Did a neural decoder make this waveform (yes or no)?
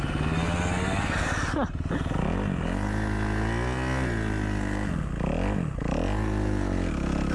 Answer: no